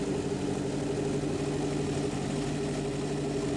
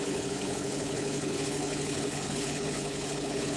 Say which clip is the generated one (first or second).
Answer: second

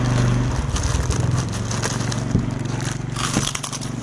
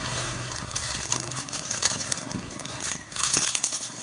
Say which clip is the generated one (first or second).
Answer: second